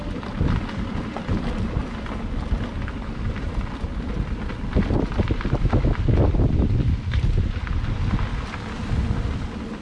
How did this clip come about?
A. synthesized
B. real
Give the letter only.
B